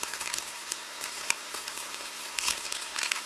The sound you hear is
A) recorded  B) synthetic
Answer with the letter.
B